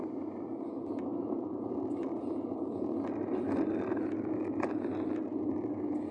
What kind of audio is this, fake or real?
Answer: real